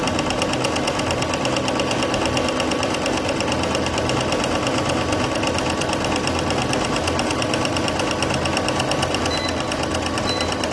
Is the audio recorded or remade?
recorded